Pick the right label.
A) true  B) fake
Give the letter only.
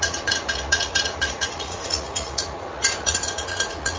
B